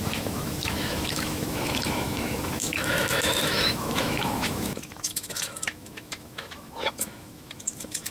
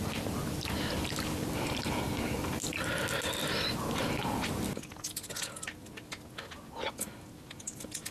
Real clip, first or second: second